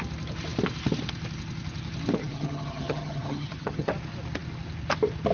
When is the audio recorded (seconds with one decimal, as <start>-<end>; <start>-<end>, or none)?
0.0-2.2; 3.9-5.3